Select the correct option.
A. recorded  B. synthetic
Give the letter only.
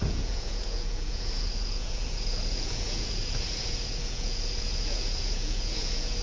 B